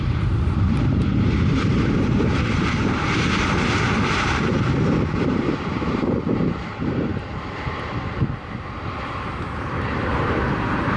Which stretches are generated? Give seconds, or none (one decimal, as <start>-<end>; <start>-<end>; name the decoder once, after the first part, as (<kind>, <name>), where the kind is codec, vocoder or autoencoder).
0.0-7.1 (vocoder, BigVGAN v2); 9.0-11.0

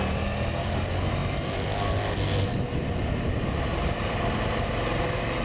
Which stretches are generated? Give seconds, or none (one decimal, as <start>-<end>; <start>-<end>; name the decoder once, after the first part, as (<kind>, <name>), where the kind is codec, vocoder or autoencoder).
none

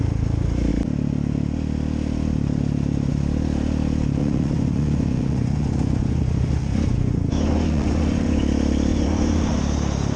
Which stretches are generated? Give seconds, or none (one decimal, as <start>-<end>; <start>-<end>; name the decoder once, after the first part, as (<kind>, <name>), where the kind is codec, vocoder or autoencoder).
4.2-8.4 (vocoder, Vocos); 8.9-9.6

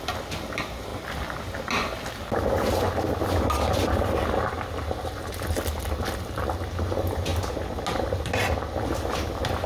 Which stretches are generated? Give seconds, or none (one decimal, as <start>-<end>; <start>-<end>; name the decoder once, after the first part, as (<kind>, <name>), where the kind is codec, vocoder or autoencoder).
none

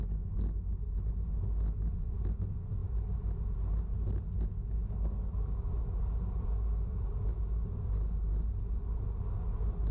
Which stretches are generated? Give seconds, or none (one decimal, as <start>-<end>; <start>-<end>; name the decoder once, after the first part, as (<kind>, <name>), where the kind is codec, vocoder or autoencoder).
none